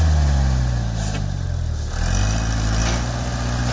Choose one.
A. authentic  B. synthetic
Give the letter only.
A